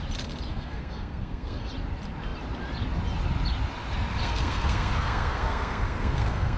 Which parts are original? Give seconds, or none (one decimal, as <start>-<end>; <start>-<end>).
0.0-0.5; 1.7-4.2